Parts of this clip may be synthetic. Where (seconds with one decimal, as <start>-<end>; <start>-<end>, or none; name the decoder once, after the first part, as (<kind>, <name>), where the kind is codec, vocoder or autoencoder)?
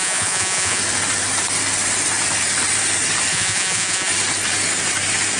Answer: 0.0-0.8 (vocoder, Vocos); 3.3-4.1